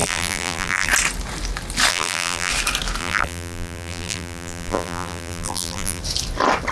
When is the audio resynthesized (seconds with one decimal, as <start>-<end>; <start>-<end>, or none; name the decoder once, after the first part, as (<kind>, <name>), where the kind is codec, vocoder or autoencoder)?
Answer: 0.0-0.9 (vocoder, BigVGAN v2); 1.9-2.5; 3.0-6.0